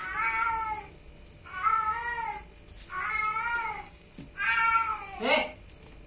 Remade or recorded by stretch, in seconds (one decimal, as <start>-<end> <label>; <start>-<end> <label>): 0.0-3.6 recorded; 3.6-4.1 remade; 4.1-6.1 recorded